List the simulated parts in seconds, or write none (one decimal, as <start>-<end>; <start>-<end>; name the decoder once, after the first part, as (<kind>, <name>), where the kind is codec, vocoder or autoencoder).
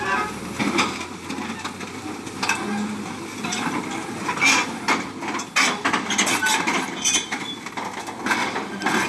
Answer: 0.6-1.3 (vocoder, BigVGAN v2); 6.7-7.8